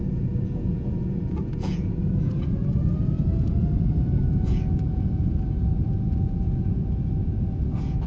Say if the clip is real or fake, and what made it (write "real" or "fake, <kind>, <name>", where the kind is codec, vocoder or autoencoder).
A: fake, vocoder, Vocos